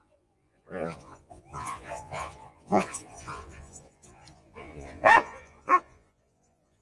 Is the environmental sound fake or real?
fake